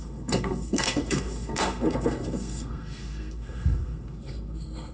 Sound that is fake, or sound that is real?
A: fake